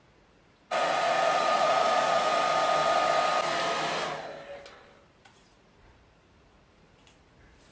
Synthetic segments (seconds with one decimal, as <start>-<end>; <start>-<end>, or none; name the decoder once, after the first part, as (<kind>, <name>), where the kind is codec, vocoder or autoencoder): 0.0-2.3 (vocoder, Vocos); 5.2-7.7